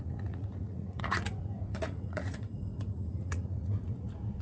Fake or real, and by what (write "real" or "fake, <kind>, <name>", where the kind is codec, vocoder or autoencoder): fake, vocoder, Vocos